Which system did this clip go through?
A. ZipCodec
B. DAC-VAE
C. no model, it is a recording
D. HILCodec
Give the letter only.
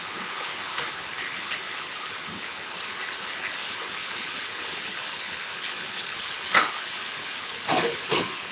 D